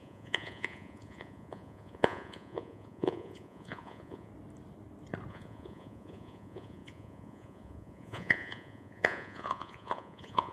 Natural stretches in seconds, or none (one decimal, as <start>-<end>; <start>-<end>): 4.3-5.3